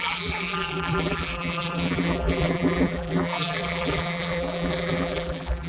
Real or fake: fake